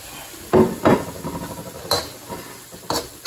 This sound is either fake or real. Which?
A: real